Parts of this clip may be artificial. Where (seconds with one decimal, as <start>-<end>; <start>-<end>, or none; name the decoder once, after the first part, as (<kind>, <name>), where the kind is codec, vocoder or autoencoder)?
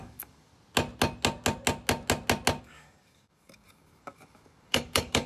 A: 0.0-0.5 (codec, DAC); 2.6-5.3